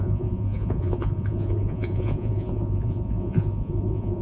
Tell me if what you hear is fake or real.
fake